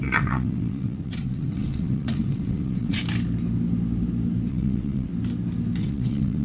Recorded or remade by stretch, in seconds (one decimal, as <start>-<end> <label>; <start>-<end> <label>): 0.0-3.0 remade; 3.0-4.5 recorded; 4.5-5.1 remade; 5.1-5.8 recorded; 5.8-6.4 remade